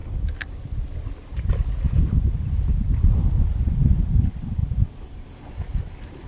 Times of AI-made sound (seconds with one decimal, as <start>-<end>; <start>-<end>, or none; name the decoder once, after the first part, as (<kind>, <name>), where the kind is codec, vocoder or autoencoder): none